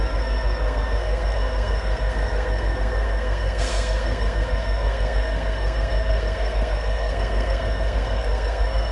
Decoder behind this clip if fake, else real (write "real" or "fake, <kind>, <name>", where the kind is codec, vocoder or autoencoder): fake, codec, SNAC